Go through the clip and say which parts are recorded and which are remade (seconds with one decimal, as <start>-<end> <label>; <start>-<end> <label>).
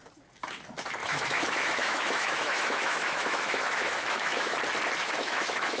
0.0-1.0 recorded; 1.0-4.5 remade; 4.5-5.0 recorded; 5.0-5.8 remade